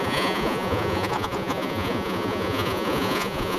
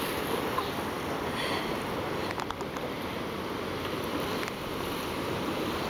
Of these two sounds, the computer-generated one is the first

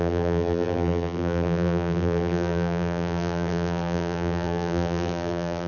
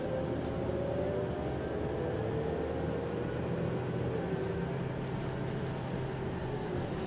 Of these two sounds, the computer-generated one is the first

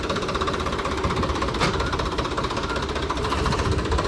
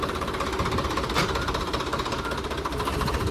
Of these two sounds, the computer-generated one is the first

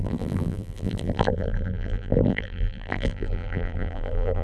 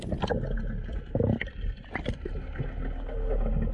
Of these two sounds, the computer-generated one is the first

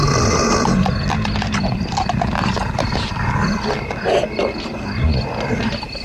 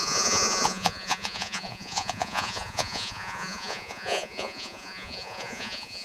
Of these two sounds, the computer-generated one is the second